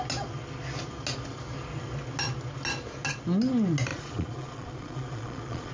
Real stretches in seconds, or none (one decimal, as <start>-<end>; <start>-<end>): 0.0-3.9